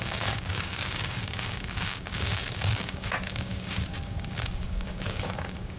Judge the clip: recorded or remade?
remade